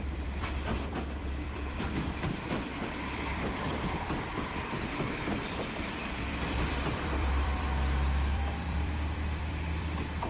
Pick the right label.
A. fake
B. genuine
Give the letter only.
A